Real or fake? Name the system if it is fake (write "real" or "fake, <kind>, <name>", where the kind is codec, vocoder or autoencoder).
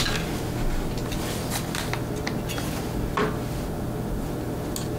real